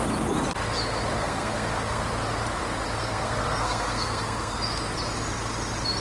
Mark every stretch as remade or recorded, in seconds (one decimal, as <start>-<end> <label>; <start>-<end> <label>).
0.0-1.2 recorded; 1.2-2.0 remade; 2.0-3.0 recorded; 3.0-4.6 remade; 4.6-6.0 recorded

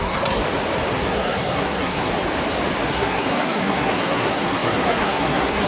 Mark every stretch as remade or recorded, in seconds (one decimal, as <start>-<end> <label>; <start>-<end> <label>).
0.0-0.4 remade; 0.4-1.0 recorded; 1.0-2.1 remade; 2.1-2.9 recorded; 2.9-5.7 remade